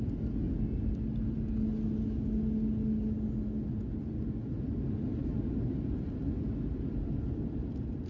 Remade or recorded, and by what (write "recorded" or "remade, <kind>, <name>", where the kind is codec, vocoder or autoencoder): recorded